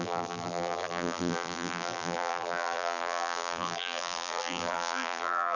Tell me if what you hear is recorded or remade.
remade